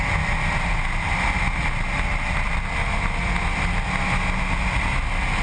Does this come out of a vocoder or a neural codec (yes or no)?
no